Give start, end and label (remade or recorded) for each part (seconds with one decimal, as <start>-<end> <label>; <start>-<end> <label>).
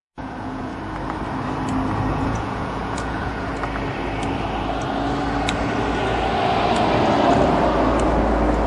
0.0-0.7 remade; 0.7-2.1 recorded; 2.1-3.5 remade; 3.5-8.7 recorded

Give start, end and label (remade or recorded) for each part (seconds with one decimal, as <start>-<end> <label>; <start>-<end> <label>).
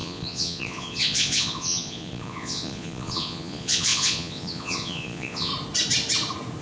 0.0-5.5 remade; 5.5-6.6 recorded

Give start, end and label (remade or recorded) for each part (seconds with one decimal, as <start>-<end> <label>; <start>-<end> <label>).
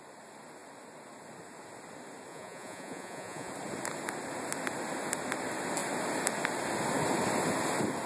0.0-2.3 recorded; 2.3-3.5 remade; 3.5-8.1 recorded